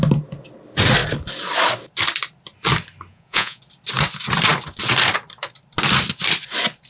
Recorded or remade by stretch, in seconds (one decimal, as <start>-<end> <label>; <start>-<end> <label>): 0.0-3.1 recorded; 3.1-3.6 remade; 3.6-6.9 recorded